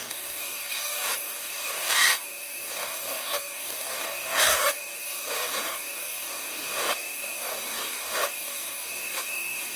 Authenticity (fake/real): fake